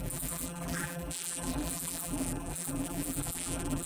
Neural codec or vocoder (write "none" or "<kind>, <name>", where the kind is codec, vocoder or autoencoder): vocoder, BigVGAN v2